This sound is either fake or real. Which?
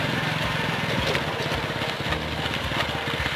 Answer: real